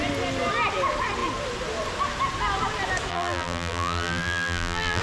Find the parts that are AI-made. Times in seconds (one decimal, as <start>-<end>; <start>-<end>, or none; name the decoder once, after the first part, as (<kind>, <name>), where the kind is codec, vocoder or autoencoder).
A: 3.1-5.0 (vocoder, BigVGAN v2)